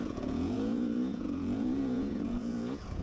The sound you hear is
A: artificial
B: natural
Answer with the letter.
A